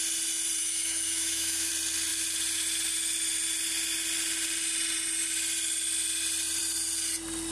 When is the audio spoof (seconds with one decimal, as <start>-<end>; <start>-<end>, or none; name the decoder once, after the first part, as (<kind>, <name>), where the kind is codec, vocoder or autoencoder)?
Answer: 0.6-1.7 (autoencoder, DAC-VAE)